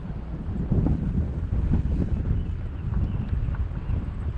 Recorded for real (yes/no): yes